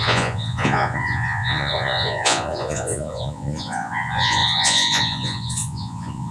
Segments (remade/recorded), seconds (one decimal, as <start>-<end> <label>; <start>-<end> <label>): 0.0-6.3 remade